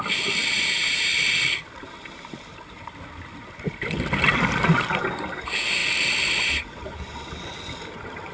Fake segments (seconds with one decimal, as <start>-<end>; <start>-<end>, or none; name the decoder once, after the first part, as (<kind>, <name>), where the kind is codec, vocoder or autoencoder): none

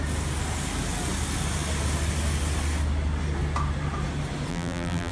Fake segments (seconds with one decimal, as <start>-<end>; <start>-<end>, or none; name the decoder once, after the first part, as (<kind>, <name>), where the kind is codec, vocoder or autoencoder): 4.5-5.1 (vocoder, BigVGAN v2)

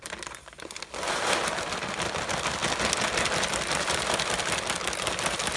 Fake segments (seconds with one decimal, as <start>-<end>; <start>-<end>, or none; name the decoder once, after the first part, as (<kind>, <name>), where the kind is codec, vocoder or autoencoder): none

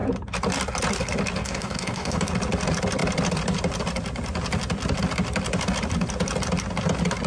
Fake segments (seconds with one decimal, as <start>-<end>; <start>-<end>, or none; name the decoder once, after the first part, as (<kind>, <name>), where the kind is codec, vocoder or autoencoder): 1.4-2.3 (codec, DAC)

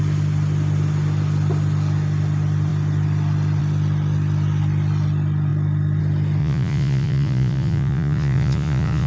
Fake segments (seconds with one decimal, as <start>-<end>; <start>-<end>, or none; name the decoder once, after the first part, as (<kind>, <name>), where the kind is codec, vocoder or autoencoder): 6.4-9.1 (vocoder, Vocos)

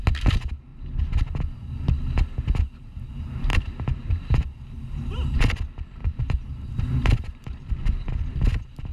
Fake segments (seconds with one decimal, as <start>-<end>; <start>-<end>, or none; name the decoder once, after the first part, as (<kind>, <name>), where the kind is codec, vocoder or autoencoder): 3.5-4.4 (vocoder, BigVGAN v2); 6.0-7.7

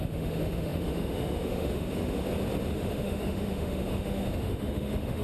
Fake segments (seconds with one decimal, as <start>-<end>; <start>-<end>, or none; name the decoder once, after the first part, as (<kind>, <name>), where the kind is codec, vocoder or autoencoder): 0.0-2.2 (autoencoder, DAC-VAE); 2.7-5.2

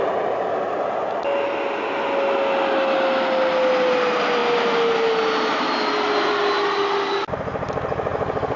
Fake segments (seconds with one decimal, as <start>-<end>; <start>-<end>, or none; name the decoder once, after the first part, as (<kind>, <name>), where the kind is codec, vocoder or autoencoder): none